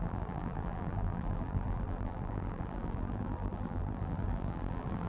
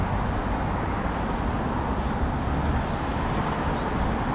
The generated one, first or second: first